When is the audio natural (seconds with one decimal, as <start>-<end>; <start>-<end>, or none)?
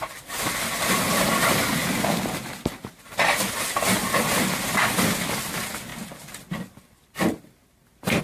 0.0-8.2